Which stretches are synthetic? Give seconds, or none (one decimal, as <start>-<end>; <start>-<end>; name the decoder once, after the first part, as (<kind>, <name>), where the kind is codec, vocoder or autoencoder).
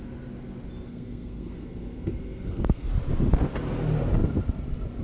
0.9-2.9 (codec, SNAC)